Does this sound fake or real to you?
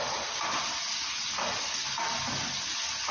real